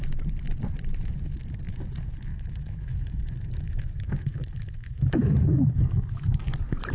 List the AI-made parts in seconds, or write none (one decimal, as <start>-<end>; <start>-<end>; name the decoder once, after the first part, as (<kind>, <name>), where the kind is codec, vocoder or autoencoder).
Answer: 2.3-6.4 (autoencoder, DAC-VAE)